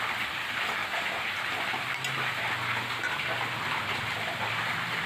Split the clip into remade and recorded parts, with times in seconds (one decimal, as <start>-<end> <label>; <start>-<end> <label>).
0.0-0.8 remade; 0.8-3.9 recorded; 3.9-5.1 remade